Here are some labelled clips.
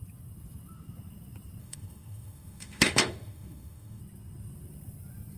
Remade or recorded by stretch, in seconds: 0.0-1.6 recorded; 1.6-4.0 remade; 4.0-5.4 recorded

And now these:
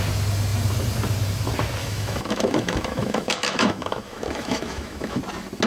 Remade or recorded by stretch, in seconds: 0.0-1.8 recorded; 1.8-5.2 remade; 5.2-5.7 recorded

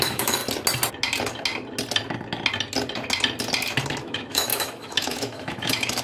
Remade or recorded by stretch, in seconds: 0.0-0.4 remade; 0.4-4.0 recorded; 4.0-6.0 remade

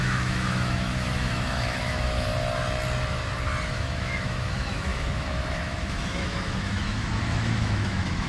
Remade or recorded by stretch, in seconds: 0.0-2.3 remade; 2.3-3.7 recorded; 3.7-8.3 remade

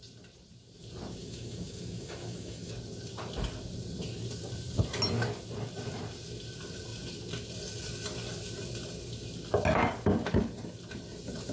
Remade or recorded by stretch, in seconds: 0.0-1.2 recorded; 1.2-2.7 remade; 2.7-11.5 recorded

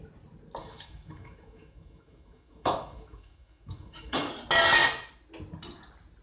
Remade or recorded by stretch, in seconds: 0.0-0.6 recorded; 0.6-4.3 remade; 4.3-6.2 recorded

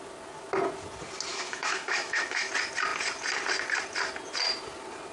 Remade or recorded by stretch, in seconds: 0.0-1.3 recorded; 1.3-2.5 remade; 2.5-5.1 recorded